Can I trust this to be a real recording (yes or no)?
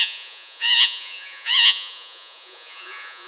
no